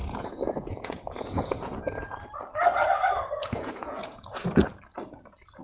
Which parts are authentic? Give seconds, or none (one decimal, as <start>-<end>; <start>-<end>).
1.8-3.4; 4.5-5.6